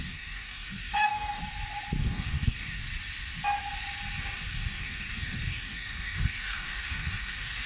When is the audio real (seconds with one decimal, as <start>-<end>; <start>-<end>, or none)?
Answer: 1.4-2.0; 2.8-4.2